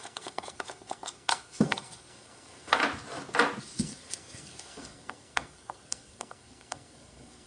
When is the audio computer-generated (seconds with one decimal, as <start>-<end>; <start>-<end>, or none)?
0.0-2.8; 3.6-7.5